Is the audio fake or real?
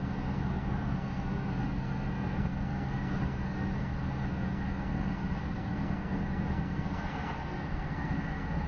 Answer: fake